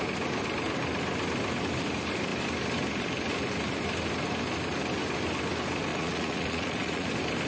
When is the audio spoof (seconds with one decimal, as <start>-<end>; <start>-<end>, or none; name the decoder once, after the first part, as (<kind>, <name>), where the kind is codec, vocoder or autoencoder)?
5.9-7.1 (vocoder, Vocos)